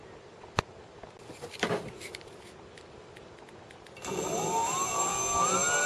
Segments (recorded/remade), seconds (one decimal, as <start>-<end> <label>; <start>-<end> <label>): 0.0-5.9 recorded